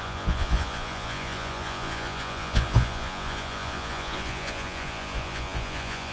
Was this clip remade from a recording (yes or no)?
yes